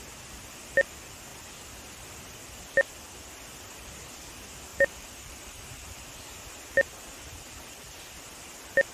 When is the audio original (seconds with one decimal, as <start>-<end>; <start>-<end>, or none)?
0.0-4.7; 6.0-8.9